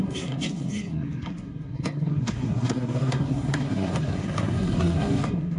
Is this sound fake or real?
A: fake